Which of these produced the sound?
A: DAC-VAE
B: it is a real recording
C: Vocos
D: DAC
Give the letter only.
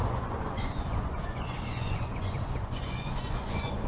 C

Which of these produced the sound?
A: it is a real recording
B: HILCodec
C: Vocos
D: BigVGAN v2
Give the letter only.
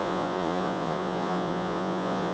C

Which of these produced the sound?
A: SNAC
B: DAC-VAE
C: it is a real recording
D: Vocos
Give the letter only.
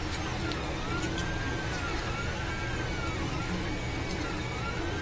C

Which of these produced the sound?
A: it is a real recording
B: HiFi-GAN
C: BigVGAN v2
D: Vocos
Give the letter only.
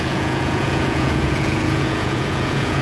D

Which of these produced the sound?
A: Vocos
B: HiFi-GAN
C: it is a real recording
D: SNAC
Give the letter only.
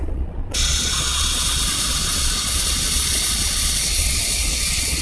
A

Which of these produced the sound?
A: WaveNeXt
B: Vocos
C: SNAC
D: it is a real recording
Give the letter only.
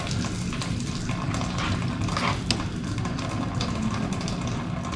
D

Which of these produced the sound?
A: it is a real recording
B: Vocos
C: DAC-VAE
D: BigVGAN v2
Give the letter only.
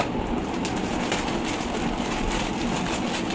A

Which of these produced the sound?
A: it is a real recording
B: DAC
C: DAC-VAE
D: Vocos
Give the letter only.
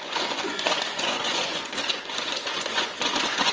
D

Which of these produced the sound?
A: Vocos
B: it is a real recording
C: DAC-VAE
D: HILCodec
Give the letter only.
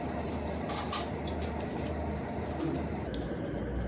B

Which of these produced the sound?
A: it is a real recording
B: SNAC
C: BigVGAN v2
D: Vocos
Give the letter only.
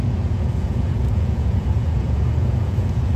D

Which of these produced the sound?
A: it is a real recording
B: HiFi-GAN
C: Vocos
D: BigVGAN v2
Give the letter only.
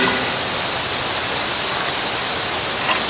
A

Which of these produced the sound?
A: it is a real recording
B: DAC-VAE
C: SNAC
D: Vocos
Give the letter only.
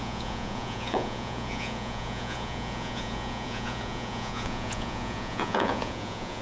D